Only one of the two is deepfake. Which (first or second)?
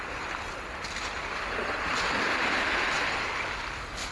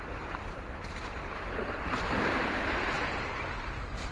second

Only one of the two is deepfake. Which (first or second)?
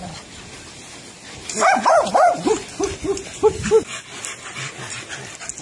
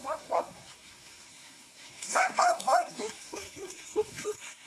second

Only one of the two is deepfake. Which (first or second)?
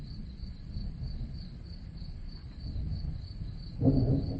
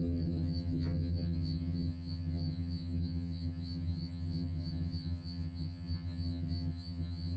second